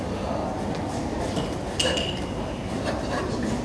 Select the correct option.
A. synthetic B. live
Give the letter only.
B